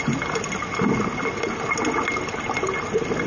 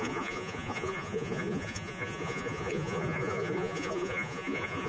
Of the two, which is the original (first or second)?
first